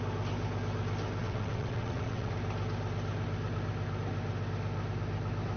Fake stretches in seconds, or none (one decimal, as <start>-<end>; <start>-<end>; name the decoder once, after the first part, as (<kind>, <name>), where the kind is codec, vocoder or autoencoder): 1.2-2.3 (vocoder, WaveNeXt)